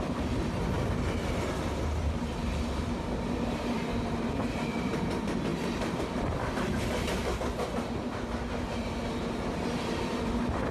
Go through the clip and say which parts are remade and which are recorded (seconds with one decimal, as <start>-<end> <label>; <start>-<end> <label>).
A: 0.0-2.4 recorded; 2.4-3.0 remade; 3.0-5.5 recorded; 5.5-7.4 remade; 7.4-10.7 recorded